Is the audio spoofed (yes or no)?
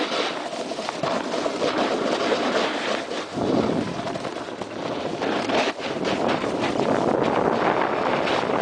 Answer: no